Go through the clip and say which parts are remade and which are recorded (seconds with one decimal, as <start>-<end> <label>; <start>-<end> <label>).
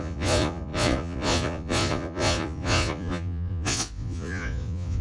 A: 0.0-5.0 remade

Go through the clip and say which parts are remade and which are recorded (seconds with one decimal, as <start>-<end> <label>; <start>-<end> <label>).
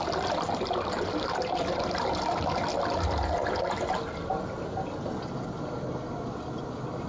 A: 0.0-7.1 recorded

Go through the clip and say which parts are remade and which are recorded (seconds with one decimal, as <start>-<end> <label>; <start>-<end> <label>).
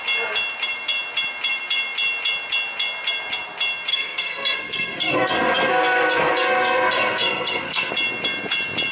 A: 0.0-3.9 recorded; 3.9-7.9 remade; 7.9-8.9 recorded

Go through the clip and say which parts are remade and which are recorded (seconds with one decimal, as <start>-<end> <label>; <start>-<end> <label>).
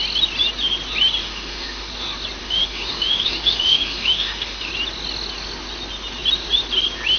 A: 0.0-1.2 recorded; 1.2-1.9 remade; 1.9-2.4 recorded; 2.4-4.7 remade; 4.7-7.2 recorded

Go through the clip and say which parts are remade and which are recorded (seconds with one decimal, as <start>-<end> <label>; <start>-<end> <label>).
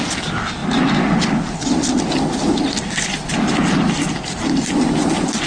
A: 0.0-5.5 recorded